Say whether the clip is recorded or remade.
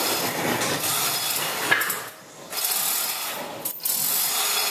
recorded